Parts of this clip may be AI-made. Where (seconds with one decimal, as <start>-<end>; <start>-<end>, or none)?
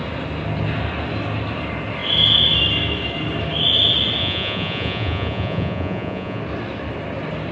4.2-6.4